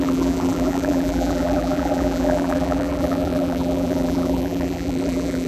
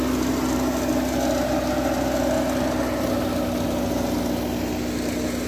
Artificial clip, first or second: first